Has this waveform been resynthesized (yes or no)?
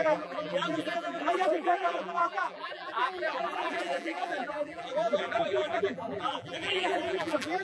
yes